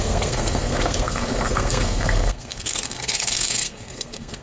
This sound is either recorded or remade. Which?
remade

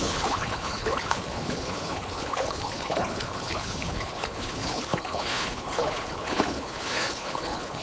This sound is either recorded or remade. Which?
remade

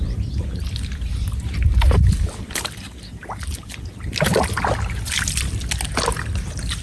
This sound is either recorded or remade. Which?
recorded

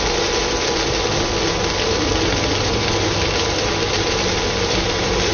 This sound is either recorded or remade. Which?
remade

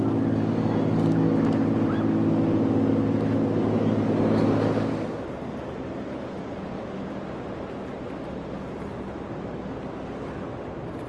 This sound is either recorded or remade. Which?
recorded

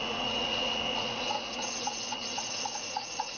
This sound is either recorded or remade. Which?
remade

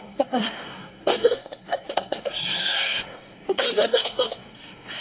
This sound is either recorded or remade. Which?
remade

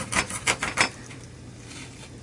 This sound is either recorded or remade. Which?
remade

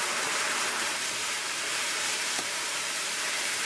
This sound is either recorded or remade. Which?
remade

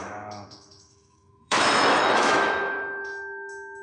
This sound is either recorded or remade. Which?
remade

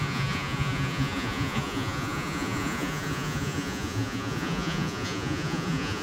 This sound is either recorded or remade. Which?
remade